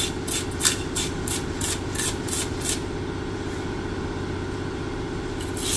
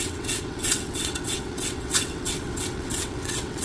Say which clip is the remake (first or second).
second